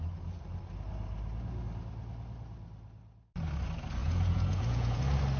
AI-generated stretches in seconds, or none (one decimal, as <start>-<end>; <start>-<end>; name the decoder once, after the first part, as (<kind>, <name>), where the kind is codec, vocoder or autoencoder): 4.0-5.0 (vocoder, Vocos)